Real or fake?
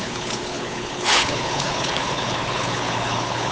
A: fake